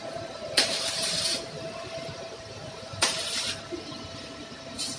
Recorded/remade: remade